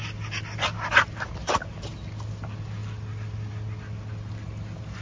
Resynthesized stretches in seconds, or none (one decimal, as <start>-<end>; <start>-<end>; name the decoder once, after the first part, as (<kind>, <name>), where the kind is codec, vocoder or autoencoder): none